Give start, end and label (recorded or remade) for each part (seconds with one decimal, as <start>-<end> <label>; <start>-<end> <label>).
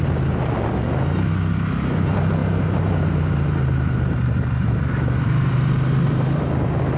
0.0-2.4 recorded; 2.4-6.4 remade; 6.4-7.0 recorded